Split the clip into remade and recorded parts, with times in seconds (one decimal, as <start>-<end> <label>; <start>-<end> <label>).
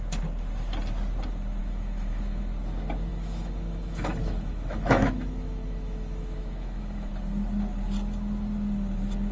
0.0-1.6 recorded; 1.6-2.4 remade; 2.4-3.1 recorded; 3.1-7.1 remade; 7.1-9.3 recorded